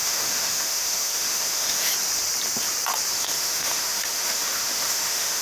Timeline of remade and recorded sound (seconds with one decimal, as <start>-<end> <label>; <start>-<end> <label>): 0.0-1.9 remade; 1.9-3.1 recorded; 3.1-5.4 remade